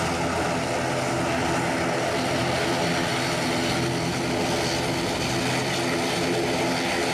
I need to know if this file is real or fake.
real